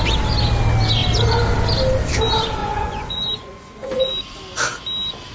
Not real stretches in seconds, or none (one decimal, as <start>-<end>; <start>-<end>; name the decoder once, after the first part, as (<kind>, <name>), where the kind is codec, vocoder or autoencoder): 2.6-4.1 (vocoder, Vocos)